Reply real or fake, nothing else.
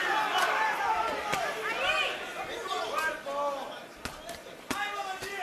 real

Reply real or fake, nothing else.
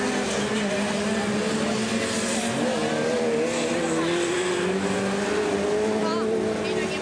real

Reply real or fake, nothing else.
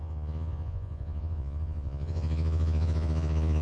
fake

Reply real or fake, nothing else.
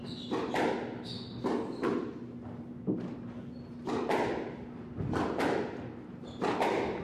real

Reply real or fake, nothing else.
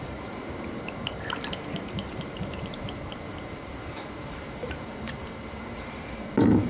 fake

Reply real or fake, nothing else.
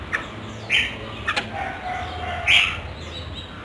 real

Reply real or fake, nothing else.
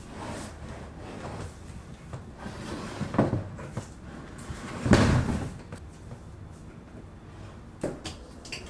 real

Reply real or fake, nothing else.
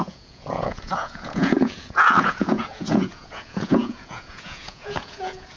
fake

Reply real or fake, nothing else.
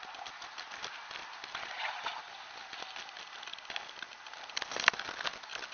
real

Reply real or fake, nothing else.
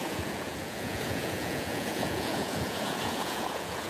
fake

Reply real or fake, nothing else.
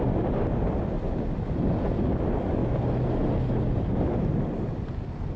real